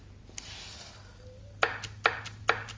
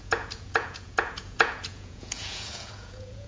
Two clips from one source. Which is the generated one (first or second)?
second